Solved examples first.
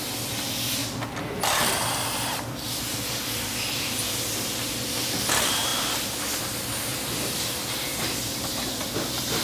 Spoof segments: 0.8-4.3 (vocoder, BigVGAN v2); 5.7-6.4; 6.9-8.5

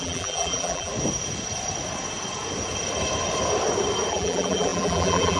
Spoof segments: 0.0-0.9 (vocoder, BigVGAN v2); 4.1-5.4

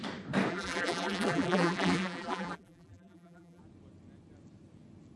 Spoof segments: 0.5-3.6 (vocoder, BigVGAN v2)

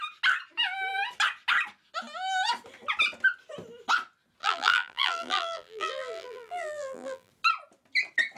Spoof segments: 4.4-7.3 (vocoder, BigVGAN v2)

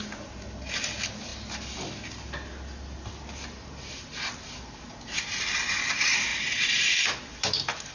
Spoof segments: none